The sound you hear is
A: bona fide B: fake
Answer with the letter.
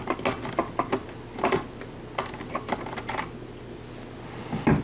A